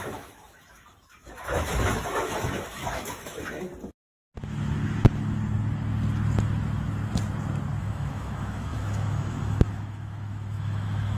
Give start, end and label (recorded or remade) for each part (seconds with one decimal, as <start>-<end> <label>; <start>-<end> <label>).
0.0-3.7 remade; 3.7-7.8 recorded; 7.8-11.2 remade